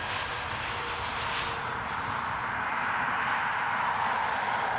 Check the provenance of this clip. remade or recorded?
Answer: recorded